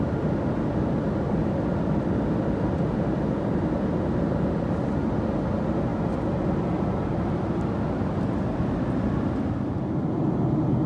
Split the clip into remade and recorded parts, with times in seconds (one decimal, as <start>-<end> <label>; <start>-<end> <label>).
0.0-10.9 recorded